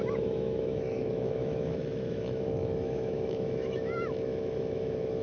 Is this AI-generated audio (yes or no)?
yes